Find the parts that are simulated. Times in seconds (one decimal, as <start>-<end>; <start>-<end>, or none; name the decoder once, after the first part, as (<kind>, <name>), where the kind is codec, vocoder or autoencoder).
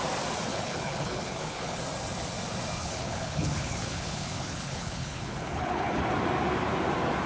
0.5-1.8 (codec, HILCodec); 2.8-6.0